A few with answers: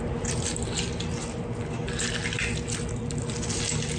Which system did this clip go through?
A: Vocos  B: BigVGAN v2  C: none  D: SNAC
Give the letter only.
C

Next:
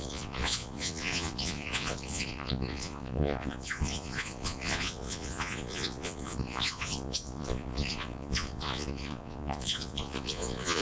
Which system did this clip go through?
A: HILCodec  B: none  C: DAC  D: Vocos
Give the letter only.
D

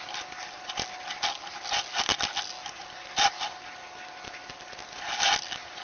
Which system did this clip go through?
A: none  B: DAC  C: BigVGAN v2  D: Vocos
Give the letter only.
A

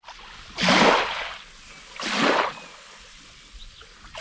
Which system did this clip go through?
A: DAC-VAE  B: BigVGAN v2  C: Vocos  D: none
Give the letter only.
D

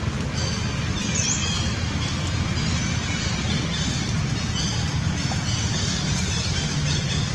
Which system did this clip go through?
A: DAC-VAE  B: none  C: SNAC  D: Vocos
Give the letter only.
B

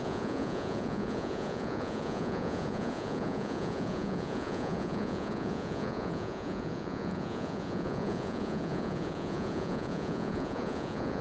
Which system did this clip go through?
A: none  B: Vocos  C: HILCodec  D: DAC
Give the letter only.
B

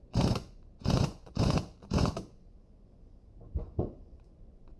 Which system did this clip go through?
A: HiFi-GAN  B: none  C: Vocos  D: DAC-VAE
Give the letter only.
C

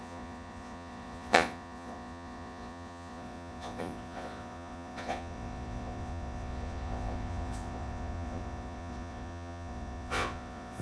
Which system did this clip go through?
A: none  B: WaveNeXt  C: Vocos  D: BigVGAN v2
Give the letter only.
C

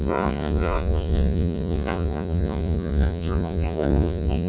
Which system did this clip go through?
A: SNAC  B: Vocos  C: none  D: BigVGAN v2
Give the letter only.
B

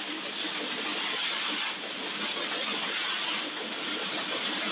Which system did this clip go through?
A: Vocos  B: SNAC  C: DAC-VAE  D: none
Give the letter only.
D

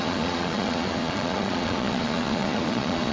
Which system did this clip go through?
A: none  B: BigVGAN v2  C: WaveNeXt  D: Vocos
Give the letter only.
D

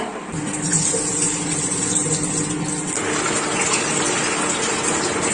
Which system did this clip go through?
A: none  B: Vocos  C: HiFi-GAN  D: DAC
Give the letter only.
A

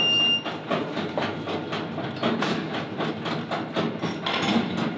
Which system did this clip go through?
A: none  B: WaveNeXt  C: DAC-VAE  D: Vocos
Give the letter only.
A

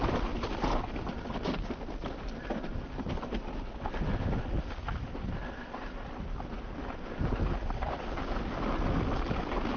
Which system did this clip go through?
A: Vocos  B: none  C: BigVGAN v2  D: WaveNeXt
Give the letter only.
B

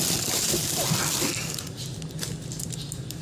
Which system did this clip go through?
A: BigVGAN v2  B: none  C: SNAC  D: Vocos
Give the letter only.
B